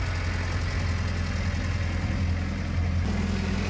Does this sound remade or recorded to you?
recorded